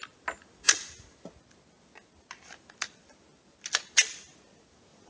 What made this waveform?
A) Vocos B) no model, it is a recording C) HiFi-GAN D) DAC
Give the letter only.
B